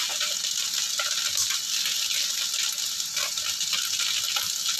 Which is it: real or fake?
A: real